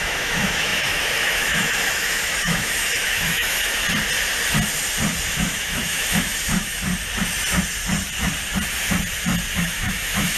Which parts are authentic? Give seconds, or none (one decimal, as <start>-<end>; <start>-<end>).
3.8-5.3; 6.9-9.6